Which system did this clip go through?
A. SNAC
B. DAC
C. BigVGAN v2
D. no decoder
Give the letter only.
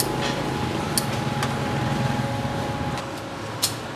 D